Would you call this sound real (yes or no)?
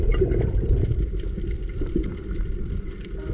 yes